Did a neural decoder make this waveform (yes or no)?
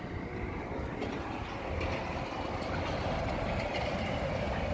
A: no